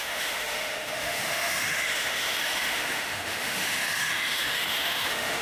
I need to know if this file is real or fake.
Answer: fake